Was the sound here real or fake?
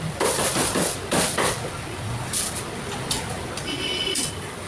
real